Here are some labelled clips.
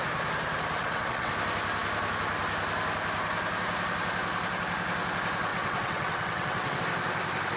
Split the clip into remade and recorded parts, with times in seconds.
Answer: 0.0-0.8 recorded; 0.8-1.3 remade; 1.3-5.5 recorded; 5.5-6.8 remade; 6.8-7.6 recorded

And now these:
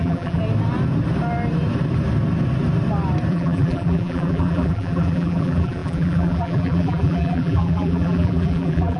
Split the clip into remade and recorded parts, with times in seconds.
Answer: 0.0-0.4 remade; 0.4-3.3 recorded; 3.3-9.0 remade